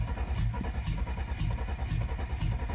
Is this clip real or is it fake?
real